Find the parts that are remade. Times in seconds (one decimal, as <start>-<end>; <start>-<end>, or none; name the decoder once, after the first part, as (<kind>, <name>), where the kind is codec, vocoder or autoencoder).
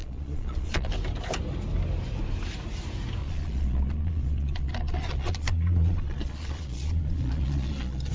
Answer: 0.0-0.9 (vocoder, Vocos); 3.2-8.1